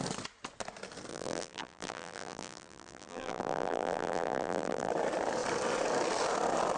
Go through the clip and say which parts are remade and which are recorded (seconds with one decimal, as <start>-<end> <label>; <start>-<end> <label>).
0.0-1.1 recorded; 1.1-4.9 remade; 4.9-6.8 recorded